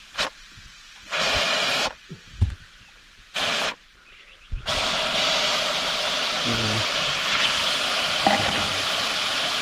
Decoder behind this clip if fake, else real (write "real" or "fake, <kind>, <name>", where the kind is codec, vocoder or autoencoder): fake, vocoder, BigVGAN v2